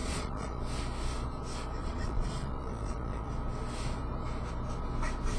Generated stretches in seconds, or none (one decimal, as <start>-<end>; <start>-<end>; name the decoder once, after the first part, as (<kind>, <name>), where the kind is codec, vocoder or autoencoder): 0.0-0.6 (vocoder, Vocos); 1.8-3.3

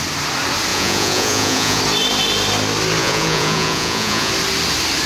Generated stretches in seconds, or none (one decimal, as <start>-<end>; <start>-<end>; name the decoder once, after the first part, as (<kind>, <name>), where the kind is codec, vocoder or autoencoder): 0.7-1.8 (vocoder, Vocos); 3.0-4.3

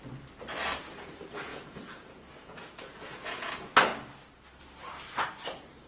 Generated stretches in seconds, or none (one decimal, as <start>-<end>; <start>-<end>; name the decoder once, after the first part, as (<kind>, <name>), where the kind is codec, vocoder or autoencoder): 1.5-3.5 (vocoder, Vocos)

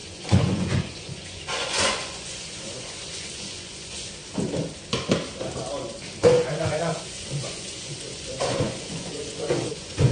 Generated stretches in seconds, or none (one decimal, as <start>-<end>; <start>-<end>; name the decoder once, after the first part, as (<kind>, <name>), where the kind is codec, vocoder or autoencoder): 0.0-4.1 (vocoder, Vocos); 6.2-10.1

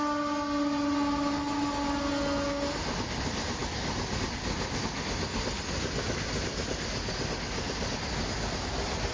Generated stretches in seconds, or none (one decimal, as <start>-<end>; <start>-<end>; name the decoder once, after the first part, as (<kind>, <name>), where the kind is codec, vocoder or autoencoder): none

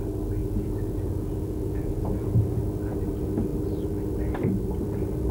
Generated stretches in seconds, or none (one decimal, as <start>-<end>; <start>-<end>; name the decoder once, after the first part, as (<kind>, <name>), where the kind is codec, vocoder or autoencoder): 0.4-2.6 (vocoder, Vocos)

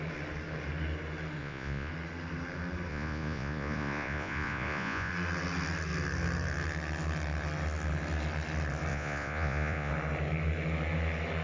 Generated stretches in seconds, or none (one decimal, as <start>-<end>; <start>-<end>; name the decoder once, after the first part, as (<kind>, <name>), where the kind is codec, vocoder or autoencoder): 1.4-1.9 (vocoder, Vocos); 2.9-5.1; 8.9-9.9